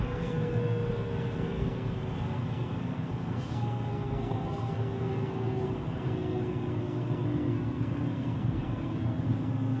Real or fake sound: fake